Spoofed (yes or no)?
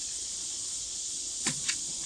yes